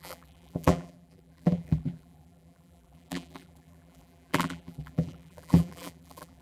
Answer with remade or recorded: remade